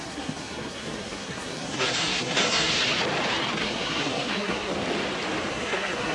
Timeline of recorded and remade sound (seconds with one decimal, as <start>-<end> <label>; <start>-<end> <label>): 0.0-2.7 remade; 2.7-3.6 recorded; 3.6-4.7 remade; 4.7-5.5 recorded; 5.5-6.1 remade